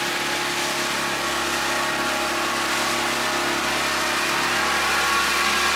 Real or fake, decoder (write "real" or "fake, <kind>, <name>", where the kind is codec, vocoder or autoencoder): real